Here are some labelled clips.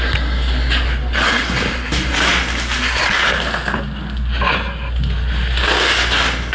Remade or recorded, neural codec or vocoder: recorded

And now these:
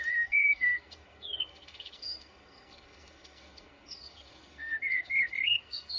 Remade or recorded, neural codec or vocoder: remade, codec, SNAC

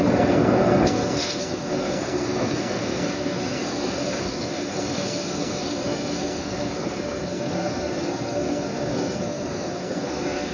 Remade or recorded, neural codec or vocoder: remade, codec, SNAC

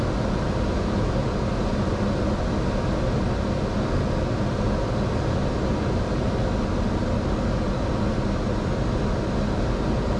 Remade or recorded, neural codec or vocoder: recorded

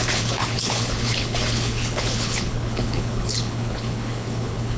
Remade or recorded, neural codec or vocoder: remade, codec, HILCodec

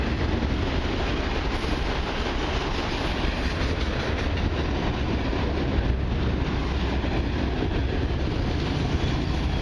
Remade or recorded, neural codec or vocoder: recorded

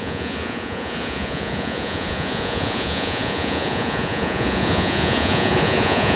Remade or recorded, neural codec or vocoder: remade, vocoder, Vocos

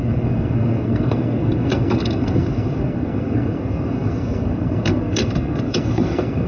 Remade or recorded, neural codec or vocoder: remade, codec, SNAC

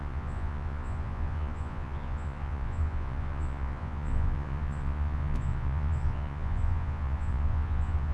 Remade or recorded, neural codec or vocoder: remade, vocoder, Vocos